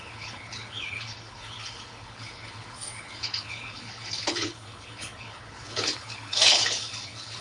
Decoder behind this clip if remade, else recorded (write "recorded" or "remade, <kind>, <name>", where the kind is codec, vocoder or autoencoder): remade, codec, HILCodec